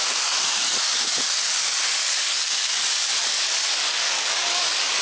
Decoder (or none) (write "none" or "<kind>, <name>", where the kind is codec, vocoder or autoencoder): codec, DAC